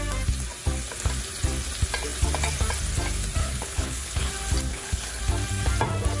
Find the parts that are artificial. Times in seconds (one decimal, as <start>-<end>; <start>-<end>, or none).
3.4-4.3; 4.7-5.2